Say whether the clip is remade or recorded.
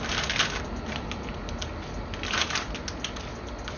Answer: recorded